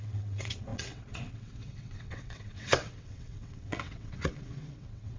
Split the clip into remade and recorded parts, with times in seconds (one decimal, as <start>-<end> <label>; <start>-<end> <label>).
0.0-5.2 remade